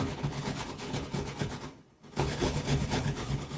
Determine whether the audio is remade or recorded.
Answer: remade